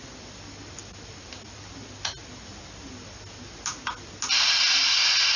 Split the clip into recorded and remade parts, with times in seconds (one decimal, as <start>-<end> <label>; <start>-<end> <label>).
0.0-5.4 recorded